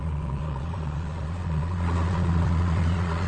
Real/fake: fake